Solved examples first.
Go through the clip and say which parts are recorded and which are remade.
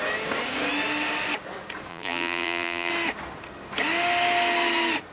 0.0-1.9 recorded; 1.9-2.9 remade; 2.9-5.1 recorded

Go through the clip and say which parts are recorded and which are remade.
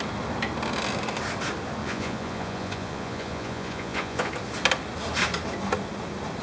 0.0-1.8 recorded; 1.8-4.3 remade; 4.3-6.4 recorded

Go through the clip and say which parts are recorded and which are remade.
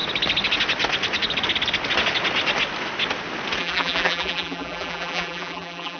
0.0-3.6 recorded; 3.6-6.0 remade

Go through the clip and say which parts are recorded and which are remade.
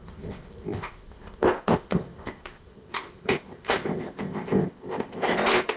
0.0-5.8 remade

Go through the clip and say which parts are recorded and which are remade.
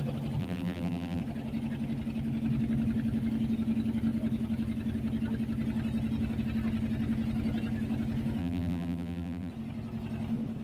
0.0-0.4 recorded; 0.4-1.2 remade; 1.2-8.4 recorded; 8.4-9.5 remade; 9.5-10.6 recorded